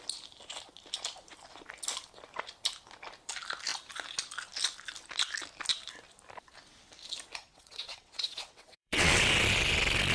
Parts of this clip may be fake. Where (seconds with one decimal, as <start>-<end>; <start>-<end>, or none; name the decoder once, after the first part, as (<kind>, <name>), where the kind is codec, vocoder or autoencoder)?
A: 7.4-9.2 (vocoder, WaveNeXt)